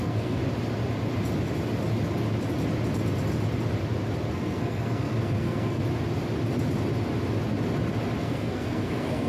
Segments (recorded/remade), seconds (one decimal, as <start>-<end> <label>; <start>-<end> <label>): 0.0-0.4 remade; 0.4-4.3 recorded; 4.3-5.8 remade; 5.8-8.2 recorded; 8.2-9.3 remade